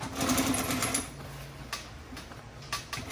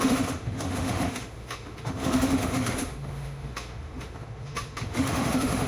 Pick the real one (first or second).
first